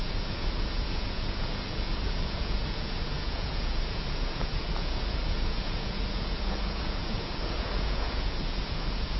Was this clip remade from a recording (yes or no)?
yes